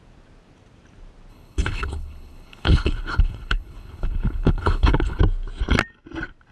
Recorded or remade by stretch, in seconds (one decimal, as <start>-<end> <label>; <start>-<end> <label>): 0.0-1.3 recorded; 1.3-5.2 remade; 5.2-6.5 recorded